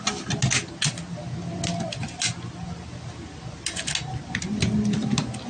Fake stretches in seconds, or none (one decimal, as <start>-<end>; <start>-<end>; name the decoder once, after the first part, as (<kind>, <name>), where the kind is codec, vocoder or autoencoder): none